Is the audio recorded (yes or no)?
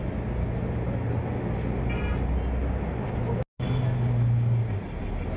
yes